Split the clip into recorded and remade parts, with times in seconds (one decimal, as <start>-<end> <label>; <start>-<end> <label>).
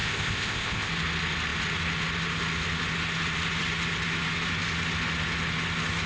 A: 0.0-0.9 remade; 0.9-6.1 recorded